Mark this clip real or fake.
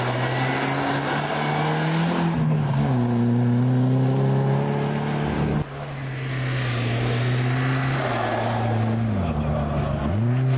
real